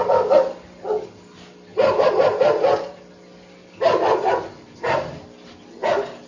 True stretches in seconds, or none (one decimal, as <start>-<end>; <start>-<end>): 0.0-6.3